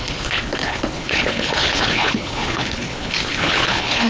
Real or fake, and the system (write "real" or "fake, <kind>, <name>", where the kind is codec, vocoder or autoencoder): fake, codec, HILCodec